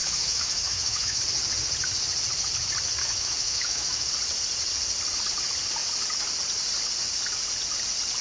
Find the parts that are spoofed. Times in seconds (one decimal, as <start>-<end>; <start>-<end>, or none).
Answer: 0.0-1.2; 3.0-4.1